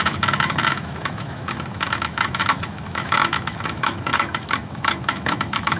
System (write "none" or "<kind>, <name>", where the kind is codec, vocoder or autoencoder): autoencoder, DAC-VAE